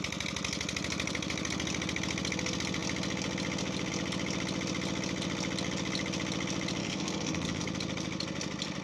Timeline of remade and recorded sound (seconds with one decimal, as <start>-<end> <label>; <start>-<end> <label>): 0.0-6.8 recorded; 6.8-7.6 remade; 7.6-8.8 recorded